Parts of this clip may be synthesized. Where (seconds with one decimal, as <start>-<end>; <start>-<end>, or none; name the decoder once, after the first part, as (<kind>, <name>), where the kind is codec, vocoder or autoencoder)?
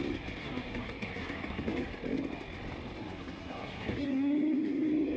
0.4-1.9 (codec, SNAC); 3.0-5.2